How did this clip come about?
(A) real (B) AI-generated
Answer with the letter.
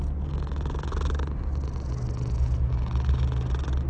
A